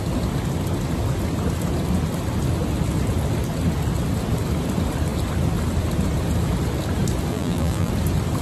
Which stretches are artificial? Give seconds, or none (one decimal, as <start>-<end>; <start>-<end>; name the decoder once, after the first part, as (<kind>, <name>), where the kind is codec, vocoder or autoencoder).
7.3-7.9 (vocoder, BigVGAN v2)